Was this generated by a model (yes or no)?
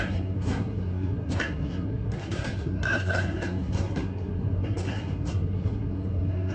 yes